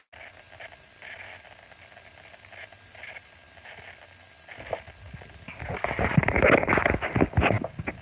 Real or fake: real